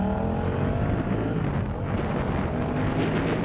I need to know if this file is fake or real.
real